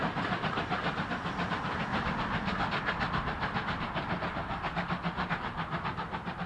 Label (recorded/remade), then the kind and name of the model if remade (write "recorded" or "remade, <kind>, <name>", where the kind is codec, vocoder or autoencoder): recorded